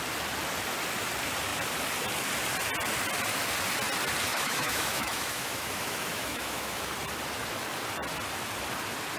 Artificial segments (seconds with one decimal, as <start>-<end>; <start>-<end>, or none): 4.3-6.9